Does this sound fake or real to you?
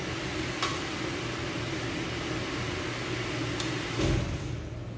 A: real